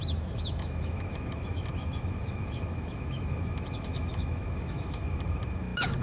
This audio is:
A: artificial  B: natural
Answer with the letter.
A